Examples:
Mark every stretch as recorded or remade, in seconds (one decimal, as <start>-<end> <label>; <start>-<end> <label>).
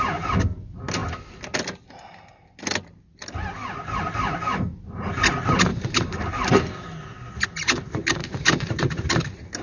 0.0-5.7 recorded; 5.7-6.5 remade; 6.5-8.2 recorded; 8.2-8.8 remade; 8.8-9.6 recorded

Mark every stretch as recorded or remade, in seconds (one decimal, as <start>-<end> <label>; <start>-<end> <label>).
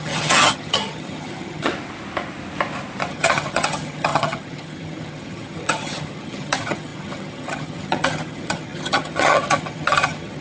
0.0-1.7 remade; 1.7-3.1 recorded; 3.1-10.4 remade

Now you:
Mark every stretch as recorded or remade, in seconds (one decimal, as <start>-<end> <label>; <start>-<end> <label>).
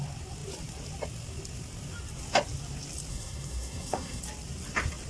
0.0-3.1 recorded; 3.1-4.2 remade; 4.2-5.1 recorded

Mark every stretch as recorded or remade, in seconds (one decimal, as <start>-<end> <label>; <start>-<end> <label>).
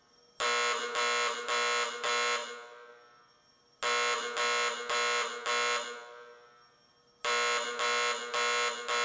0.0-9.0 recorded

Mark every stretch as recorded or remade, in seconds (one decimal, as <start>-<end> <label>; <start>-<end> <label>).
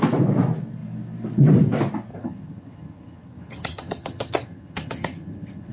0.0-2.1 recorded; 2.1-5.7 remade